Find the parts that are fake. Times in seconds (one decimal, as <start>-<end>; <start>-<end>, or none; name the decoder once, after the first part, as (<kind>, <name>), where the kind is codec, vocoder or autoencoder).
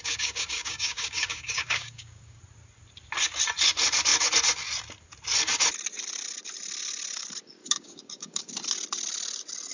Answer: 0.0-2.4 (codec, DAC); 7.6-8.5